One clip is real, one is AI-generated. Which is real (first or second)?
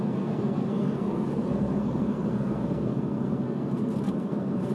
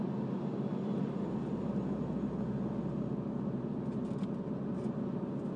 second